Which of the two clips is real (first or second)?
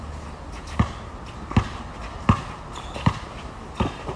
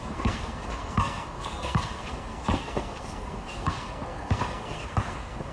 first